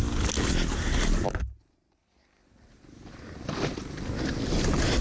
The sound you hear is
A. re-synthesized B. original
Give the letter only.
B